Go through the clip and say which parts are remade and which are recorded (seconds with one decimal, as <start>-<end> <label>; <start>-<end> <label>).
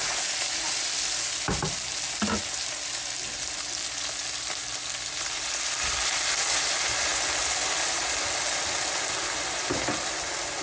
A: 0.0-10.6 recorded